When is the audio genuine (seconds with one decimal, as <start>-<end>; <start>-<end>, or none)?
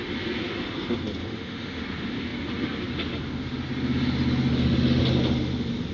0.0-1.2; 1.8-4.5; 5.0-5.9